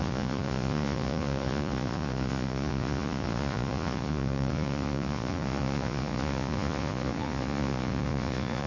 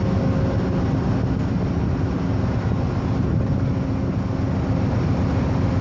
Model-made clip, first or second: first